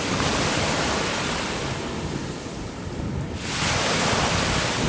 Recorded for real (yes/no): yes